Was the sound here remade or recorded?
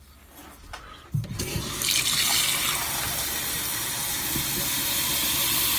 recorded